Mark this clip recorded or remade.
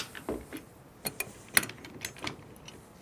recorded